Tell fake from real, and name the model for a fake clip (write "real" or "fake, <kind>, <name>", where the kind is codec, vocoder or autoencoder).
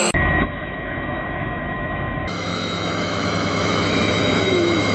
fake, autoencoder, DAC-VAE